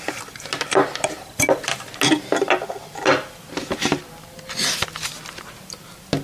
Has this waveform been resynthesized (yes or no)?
no